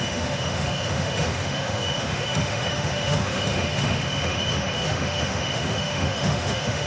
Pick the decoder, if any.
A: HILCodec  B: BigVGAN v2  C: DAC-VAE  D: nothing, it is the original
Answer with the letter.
C